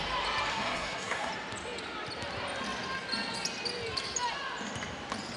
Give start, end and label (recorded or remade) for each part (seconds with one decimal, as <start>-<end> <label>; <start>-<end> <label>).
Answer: 0.0-0.5 recorded; 0.5-1.3 remade; 1.3-5.4 recorded